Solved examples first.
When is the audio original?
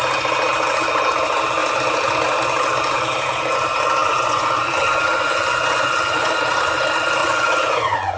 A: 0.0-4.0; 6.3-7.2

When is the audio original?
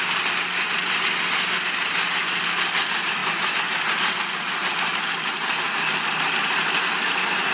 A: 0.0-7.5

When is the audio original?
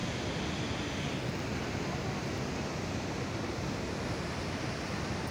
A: 0.0-5.3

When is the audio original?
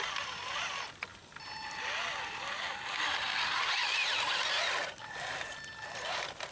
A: 0.0-6.5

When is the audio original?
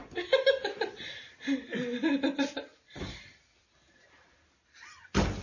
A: 0.0-0.6; 2.8-5.4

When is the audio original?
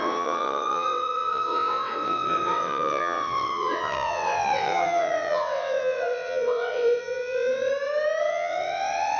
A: 7.7-8.2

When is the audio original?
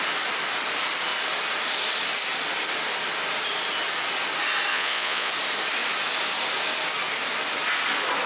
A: 0.0-4.7; 5.3-8.3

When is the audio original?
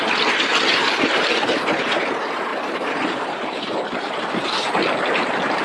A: 0.0-0.7; 1.6-2.5; 4.9-5.6